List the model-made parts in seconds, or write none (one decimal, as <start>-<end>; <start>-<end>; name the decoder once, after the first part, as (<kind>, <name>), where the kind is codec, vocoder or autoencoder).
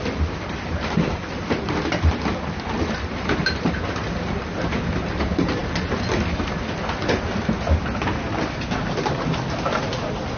0.0-10.4 (vocoder, BigVGAN v2)